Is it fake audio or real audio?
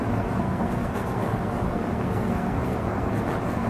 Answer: fake